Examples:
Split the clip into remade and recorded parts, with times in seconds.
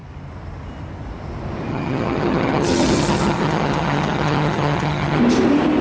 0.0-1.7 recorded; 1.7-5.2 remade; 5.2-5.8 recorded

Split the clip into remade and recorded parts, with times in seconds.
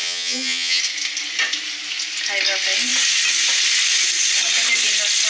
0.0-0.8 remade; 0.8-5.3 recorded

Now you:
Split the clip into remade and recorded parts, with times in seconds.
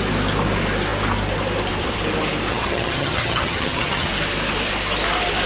0.0-2.5 recorded; 2.5-4.1 remade; 4.1-5.5 recorded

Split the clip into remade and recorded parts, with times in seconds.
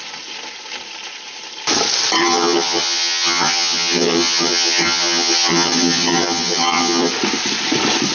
0.0-2.2 recorded; 2.2-7.1 remade; 7.1-8.1 recorded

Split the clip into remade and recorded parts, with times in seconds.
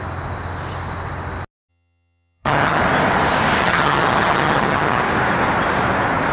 0.0-1.7 recorded; 1.7-2.8 remade; 2.8-3.6 recorded; 3.6-5.0 remade; 5.0-6.3 recorded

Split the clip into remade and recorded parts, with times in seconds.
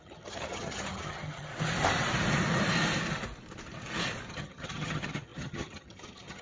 0.0-1.5 remade; 1.5-4.3 recorded; 4.3-6.4 remade